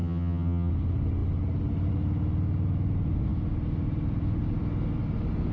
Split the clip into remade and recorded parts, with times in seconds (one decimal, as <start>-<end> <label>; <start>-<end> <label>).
0.0-0.7 remade; 0.7-5.5 recorded